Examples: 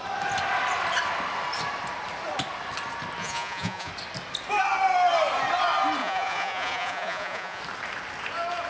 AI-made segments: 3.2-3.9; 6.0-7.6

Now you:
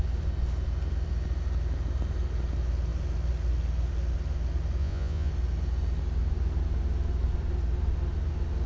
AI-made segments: 4.8-5.3

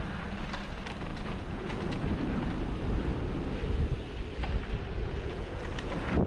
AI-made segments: 1.1-2.0; 5.0-5.6

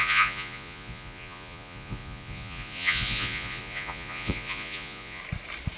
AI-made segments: 0.0-5.2